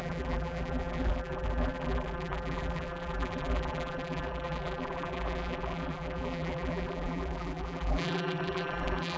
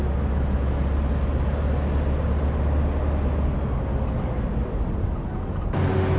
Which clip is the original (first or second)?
second